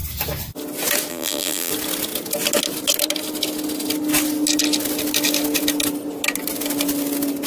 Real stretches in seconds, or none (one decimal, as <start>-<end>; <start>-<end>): 0.0-1.1; 1.7-7.5